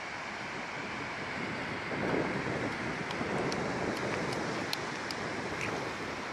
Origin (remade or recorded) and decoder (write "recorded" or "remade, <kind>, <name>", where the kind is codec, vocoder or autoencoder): recorded